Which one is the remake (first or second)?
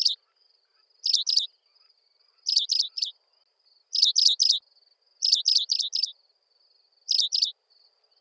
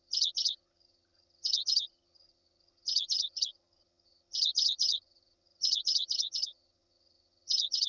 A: second